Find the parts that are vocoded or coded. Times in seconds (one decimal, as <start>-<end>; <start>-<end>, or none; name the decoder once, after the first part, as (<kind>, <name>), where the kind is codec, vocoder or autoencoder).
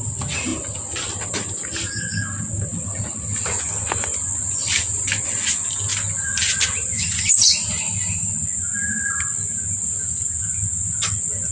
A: none